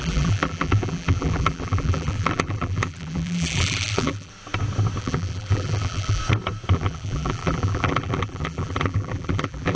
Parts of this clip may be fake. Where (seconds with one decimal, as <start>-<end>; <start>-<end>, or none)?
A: 0.0-4.3; 5.0-6.2; 6.7-9.8